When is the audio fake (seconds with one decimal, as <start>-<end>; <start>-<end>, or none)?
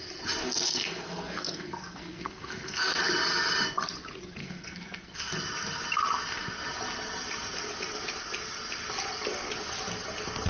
0.4-3.0; 4.4-5.3